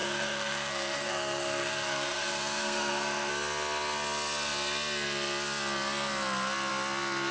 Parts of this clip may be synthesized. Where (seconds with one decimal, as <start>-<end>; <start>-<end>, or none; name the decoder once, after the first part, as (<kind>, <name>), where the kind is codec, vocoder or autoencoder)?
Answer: 0.0-3.3 (codec, SNAC)

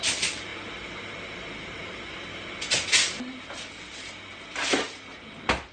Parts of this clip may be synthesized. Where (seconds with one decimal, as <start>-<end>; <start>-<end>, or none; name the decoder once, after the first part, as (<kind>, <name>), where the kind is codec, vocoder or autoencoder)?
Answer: none

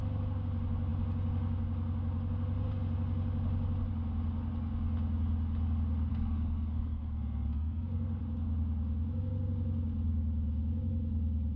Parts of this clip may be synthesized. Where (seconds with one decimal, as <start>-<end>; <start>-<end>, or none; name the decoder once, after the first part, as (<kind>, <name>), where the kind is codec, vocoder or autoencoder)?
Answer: 6.1-8.2 (codec, SNAC)

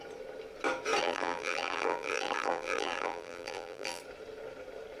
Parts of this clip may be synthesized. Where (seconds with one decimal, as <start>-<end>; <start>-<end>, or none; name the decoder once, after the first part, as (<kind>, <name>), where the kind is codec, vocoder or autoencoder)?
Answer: 1.0-4.0 (vocoder, BigVGAN v2)

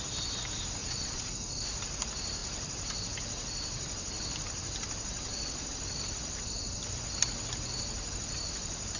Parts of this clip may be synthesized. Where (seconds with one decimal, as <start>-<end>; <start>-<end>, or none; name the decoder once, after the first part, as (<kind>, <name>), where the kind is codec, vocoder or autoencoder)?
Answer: 0.8-1.3 (vocoder, Vocos)

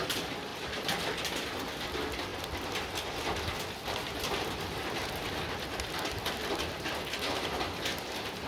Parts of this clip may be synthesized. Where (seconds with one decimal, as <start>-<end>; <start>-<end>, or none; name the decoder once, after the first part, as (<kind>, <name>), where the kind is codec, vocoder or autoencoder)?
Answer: none

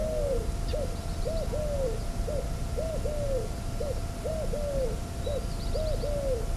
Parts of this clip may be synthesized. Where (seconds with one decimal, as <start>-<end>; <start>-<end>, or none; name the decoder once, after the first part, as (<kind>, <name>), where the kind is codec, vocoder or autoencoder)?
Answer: none

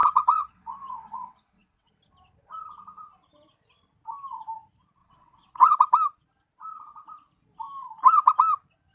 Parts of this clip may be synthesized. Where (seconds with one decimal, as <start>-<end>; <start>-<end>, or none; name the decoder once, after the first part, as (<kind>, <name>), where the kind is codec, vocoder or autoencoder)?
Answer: 0.0-1.9 (vocoder, WaveNeXt); 5.0-5.7